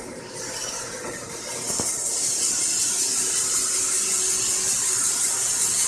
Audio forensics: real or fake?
real